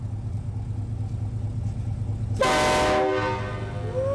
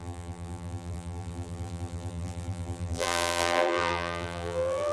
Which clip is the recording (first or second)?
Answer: first